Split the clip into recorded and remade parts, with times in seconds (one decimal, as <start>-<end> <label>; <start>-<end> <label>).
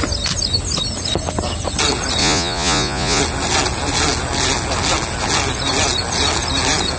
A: 0.0-2.2 recorded; 2.2-3.2 remade; 3.2-7.0 recorded